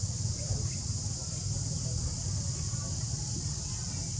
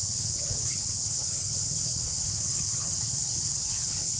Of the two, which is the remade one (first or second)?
second